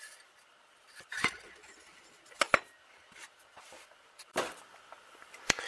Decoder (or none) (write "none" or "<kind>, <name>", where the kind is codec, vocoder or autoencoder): vocoder, BigVGAN v2